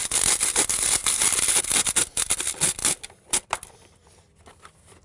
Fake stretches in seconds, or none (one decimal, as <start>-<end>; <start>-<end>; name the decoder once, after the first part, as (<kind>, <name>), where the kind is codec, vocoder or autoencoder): none